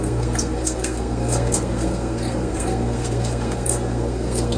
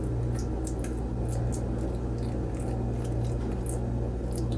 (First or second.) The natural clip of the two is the second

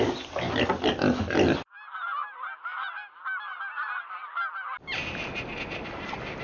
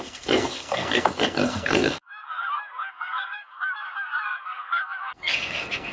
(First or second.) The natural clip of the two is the first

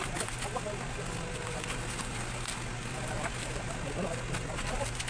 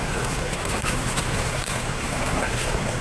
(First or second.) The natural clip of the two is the first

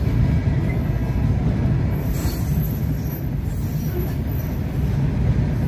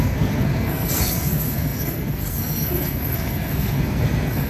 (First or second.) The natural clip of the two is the first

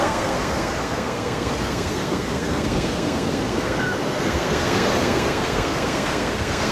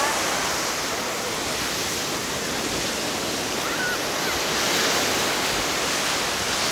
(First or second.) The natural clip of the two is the second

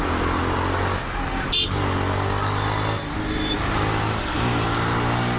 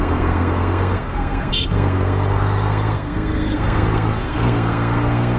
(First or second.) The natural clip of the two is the first